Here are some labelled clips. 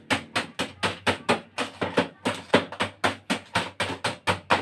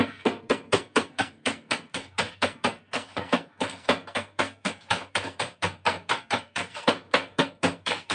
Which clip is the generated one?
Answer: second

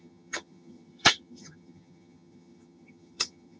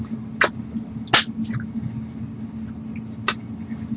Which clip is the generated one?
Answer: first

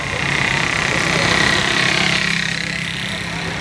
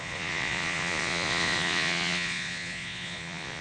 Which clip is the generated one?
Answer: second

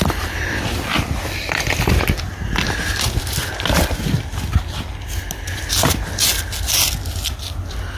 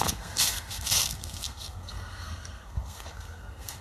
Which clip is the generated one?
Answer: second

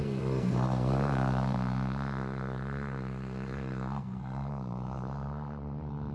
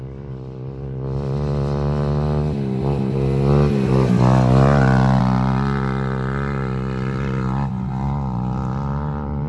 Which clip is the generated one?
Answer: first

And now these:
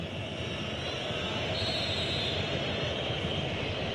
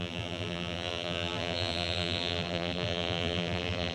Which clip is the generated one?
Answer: second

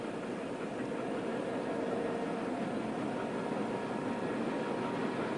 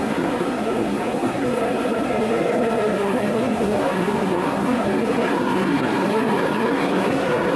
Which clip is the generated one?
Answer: second